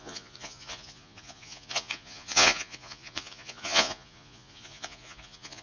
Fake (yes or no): yes